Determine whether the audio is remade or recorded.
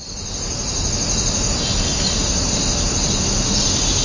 recorded